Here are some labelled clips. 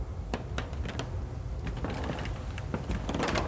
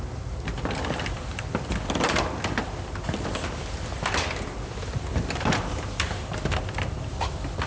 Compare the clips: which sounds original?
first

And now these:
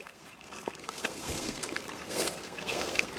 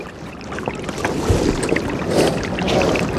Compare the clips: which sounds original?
second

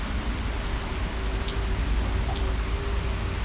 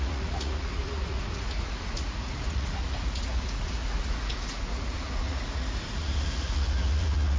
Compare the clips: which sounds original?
first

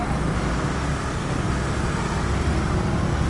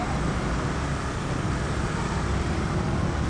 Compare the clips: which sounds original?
first